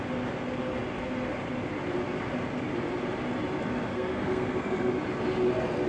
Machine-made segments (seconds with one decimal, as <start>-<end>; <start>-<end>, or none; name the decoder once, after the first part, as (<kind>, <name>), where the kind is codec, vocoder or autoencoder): 3.9-4.9 (codec, SNAC)